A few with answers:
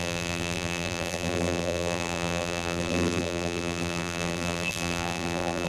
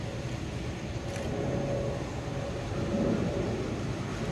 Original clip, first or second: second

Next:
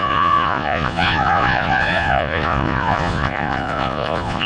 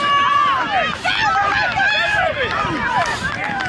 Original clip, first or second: second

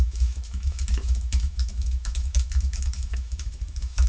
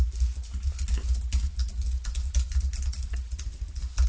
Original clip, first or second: second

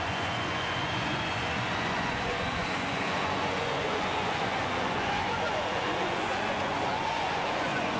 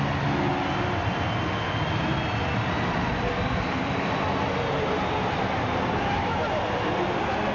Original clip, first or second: second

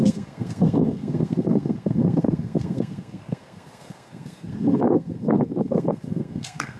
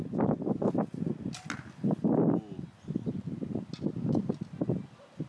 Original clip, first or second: second